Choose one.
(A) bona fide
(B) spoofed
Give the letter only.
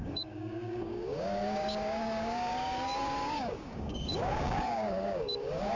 B